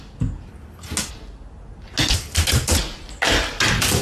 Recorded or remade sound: recorded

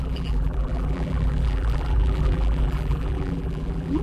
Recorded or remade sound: remade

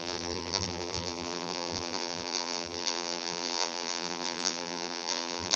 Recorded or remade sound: remade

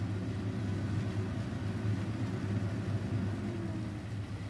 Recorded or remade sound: recorded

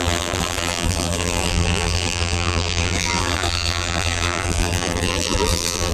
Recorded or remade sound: remade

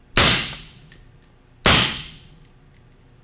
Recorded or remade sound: recorded